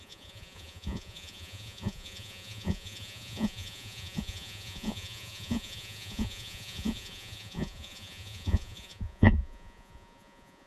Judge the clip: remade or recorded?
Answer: remade